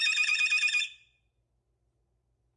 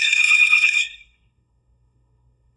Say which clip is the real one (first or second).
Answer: first